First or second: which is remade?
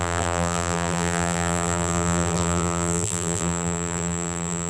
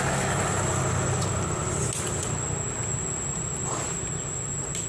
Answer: first